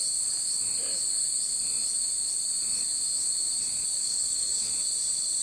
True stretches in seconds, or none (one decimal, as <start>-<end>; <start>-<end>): 0.0-4.0; 4.7-5.4